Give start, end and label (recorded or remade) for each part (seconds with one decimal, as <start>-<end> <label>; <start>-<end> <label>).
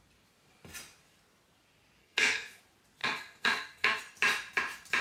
0.0-2.0 recorded; 2.0-2.6 remade; 2.6-3.0 recorded; 3.0-4.0 remade; 4.0-5.0 recorded